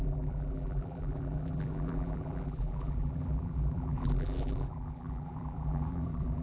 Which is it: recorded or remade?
remade